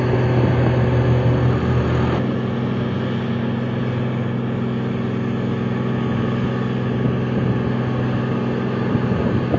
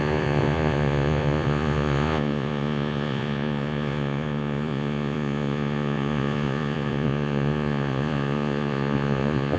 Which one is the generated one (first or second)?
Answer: second